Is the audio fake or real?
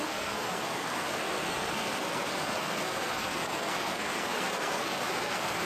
fake